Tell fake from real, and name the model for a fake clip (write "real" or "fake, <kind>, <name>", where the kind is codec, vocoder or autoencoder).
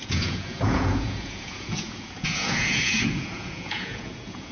fake, vocoder, Vocos